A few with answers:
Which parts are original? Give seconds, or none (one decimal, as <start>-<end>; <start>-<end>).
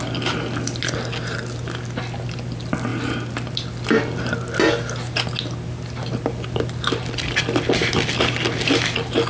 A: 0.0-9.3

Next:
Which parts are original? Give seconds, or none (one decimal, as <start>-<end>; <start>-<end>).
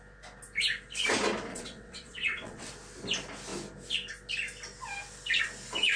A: 0.0-1.5; 2.7-6.0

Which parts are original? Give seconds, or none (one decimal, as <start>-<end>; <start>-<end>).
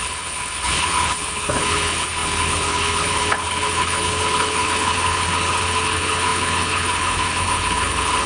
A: none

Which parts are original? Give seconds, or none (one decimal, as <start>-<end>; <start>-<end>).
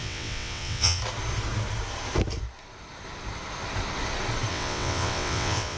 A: 1.0-4.5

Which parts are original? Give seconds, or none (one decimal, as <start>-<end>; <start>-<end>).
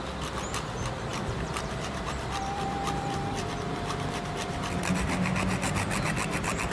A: 0.0-1.1; 4.3-6.7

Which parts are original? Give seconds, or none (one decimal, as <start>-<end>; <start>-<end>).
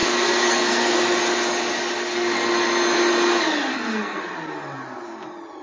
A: 1.0-3.7; 4.2-5.6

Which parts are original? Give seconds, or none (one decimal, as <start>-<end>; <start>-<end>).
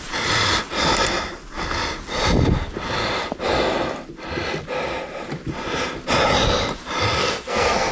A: 0.0-7.2